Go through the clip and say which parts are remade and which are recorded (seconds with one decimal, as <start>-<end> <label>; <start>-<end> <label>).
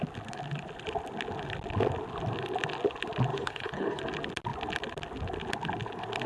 0.0-3.3 recorded; 3.3-4.0 remade; 4.0-6.3 recorded